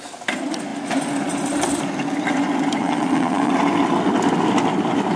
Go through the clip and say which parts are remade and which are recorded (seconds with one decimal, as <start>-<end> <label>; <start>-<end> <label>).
0.0-2.8 recorded; 2.8-3.5 remade; 3.5-5.2 recorded